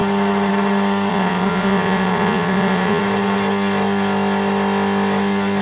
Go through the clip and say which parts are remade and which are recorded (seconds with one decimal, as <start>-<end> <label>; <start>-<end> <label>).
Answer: 0.0-1.1 recorded; 1.1-3.0 remade; 3.0-5.6 recorded